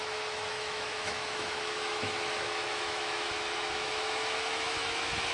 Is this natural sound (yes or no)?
no